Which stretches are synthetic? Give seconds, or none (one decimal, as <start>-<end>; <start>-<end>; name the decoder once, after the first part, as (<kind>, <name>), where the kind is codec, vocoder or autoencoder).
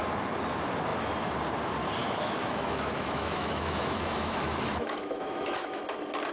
2.0-5.8 (autoencoder, DAC-VAE)